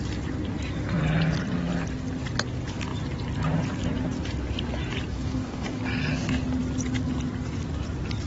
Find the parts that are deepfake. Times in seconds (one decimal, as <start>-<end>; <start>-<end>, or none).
5.1-5.8